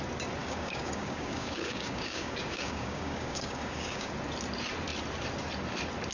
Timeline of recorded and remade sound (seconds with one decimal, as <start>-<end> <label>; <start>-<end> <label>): 0.0-0.4 recorded; 0.4-4.1 remade; 4.1-6.1 recorded